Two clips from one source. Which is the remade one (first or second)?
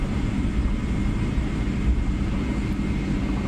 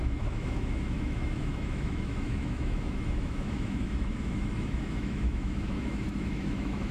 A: second